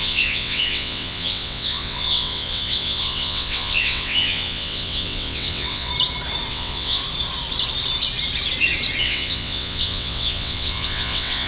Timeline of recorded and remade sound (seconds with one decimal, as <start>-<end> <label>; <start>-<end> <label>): 0.0-5.9 remade; 5.9-6.5 recorded; 6.5-7.0 remade; 7.0-9.0 recorded; 9.0-11.5 remade